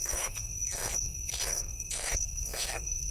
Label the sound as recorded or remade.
remade